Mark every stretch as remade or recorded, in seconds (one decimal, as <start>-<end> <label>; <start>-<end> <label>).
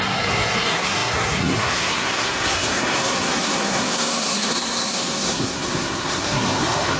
0.0-7.0 remade